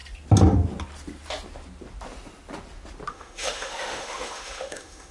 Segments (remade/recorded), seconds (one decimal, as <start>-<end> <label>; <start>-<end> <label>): 0.0-3.1 recorded; 3.1-5.1 remade